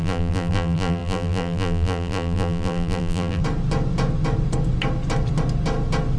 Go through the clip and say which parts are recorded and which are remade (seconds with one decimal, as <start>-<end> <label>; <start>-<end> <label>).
0.0-3.4 remade; 3.4-6.2 recorded